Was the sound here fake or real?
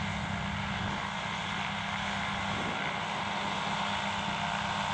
real